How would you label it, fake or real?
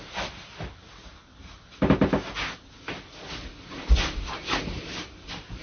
real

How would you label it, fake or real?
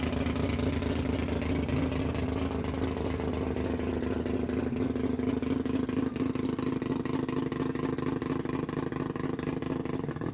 real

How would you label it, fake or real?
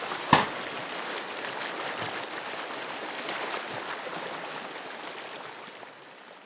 real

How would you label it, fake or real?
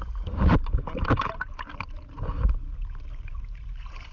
real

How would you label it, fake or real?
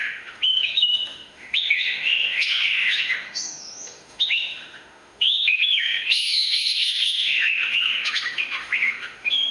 fake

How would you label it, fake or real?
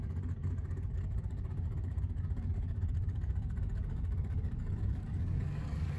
fake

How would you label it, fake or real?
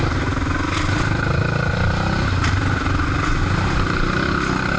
real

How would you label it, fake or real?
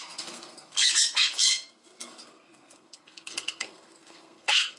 fake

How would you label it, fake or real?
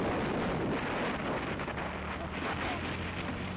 real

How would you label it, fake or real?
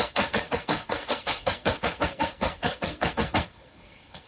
fake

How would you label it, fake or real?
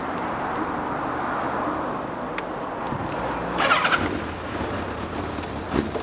real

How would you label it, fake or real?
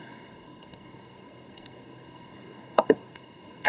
fake